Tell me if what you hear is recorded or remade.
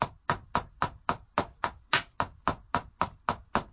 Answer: recorded